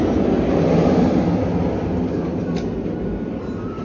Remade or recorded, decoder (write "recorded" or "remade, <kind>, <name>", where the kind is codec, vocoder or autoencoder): recorded